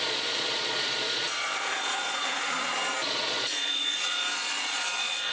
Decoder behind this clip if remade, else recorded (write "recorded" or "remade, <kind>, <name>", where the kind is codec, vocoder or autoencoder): remade, vocoder, Vocos